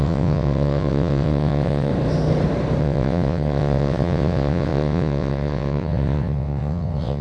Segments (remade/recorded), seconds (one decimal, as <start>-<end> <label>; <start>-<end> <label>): 0.0-1.9 remade; 1.9-2.8 recorded; 2.8-7.2 remade